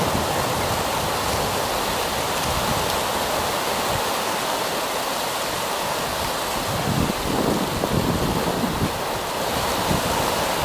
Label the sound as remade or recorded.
recorded